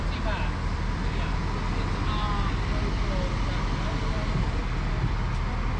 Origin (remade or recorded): recorded